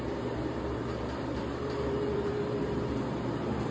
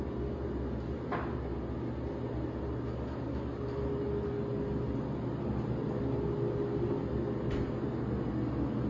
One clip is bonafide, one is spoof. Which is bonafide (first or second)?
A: second